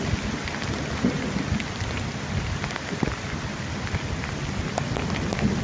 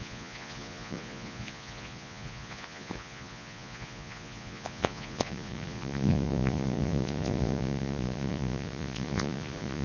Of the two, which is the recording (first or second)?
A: first